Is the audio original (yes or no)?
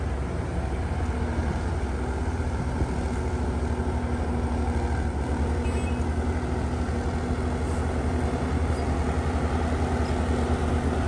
yes